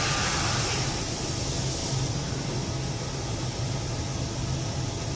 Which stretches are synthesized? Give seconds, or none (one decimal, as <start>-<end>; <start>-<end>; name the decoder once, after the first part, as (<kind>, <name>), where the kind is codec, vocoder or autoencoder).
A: none